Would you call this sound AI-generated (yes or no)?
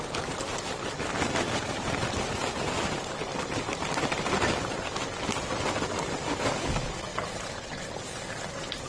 no